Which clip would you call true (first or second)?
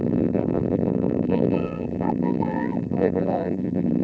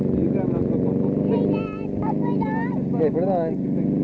second